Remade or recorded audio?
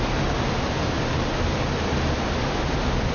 recorded